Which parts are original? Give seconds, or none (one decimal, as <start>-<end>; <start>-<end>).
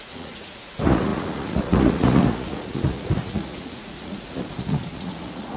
none